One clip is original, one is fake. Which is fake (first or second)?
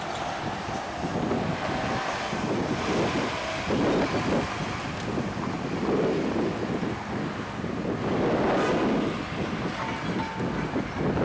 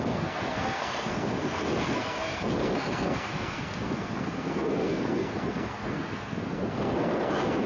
second